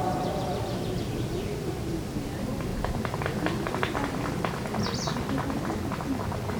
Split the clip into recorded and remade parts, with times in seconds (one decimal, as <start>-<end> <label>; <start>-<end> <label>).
0.0-6.6 remade